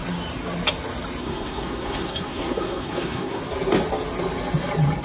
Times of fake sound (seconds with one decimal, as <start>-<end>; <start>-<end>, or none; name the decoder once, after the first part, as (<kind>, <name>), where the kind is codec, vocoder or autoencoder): 1.2-3.4 (codec, SNAC)